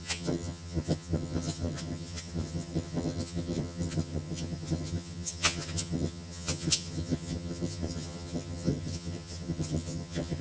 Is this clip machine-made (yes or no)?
yes